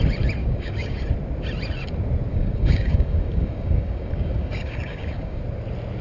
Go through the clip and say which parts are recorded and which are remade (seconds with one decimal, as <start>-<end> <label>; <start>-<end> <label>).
0.0-0.4 recorded; 0.4-1.0 remade; 1.0-2.3 recorded; 2.3-5.4 remade; 5.4-6.0 recorded